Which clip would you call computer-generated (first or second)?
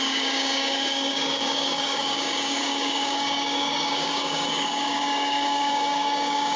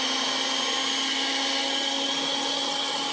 first